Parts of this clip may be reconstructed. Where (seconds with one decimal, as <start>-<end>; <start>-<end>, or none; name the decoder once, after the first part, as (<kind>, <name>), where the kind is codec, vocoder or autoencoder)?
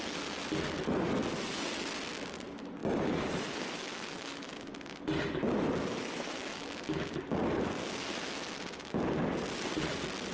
2.8-4.5 (autoencoder, DAC-VAE); 5.8-6.5